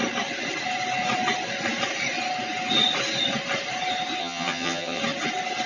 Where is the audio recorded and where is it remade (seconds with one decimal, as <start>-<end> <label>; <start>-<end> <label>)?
0.0-4.2 recorded; 4.2-5.0 remade; 5.0-5.7 recorded